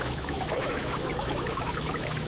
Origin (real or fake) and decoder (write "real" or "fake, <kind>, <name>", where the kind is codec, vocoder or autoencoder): fake, autoencoder, DAC-VAE